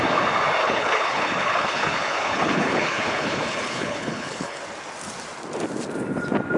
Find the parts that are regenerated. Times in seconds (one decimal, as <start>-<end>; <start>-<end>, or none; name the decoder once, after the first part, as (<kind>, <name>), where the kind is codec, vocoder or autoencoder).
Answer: 0.6-4.6 (codec, HILCodec)